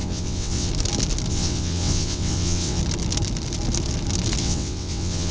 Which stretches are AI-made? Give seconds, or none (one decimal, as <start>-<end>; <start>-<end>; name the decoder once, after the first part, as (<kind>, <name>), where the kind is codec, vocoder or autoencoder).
0.0-0.7 (vocoder, WaveNeXt); 1.3-2.8; 4.4-5.3